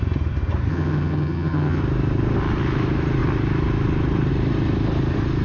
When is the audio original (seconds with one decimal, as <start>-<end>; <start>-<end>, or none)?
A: 0.0-0.7; 1.8-5.4